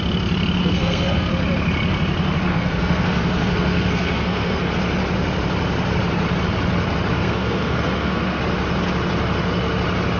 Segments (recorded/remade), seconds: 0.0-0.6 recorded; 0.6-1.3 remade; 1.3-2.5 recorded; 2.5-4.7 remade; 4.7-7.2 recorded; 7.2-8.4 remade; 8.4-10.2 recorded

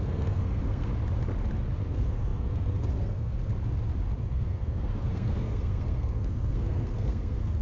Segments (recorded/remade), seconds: 0.0-0.9 remade; 0.9-1.8 recorded; 1.8-3.5 remade; 3.5-4.2 recorded; 4.2-7.6 remade

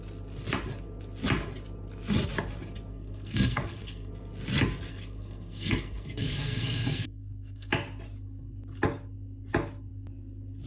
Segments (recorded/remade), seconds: 0.0-2.9 recorded; 2.9-4.1 remade; 4.1-4.9 recorded; 4.9-7.7 remade; 7.7-10.7 recorded